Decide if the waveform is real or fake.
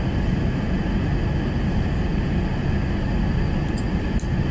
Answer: real